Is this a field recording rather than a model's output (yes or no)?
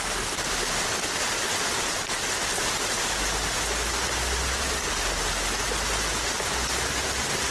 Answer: yes